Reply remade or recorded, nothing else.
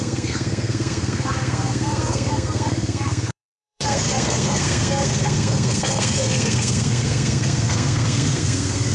remade